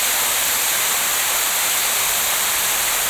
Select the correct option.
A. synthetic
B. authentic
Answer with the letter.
B